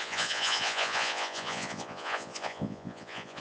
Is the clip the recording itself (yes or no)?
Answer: no